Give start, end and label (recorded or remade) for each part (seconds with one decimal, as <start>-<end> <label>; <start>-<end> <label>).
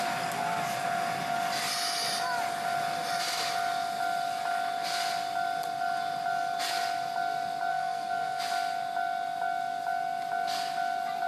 0.0-7.7 recorded; 7.7-8.4 remade; 8.4-11.3 recorded